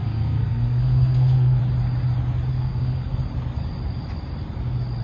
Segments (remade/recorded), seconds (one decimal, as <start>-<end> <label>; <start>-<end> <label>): 0.0-1.6 remade; 1.6-2.5 recorded; 2.5-3.2 remade; 3.2-5.0 recorded